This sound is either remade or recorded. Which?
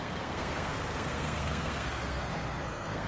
remade